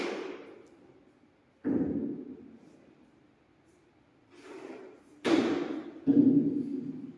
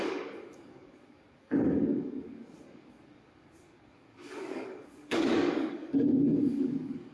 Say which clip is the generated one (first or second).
second